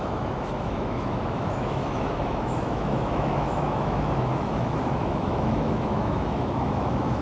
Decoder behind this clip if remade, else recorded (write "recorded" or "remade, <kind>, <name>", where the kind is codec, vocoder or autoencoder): remade, autoencoder, DAC-VAE